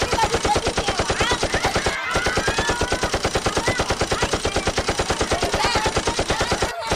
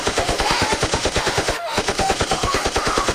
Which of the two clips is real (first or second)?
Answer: first